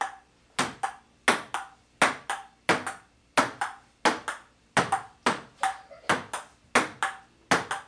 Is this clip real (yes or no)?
yes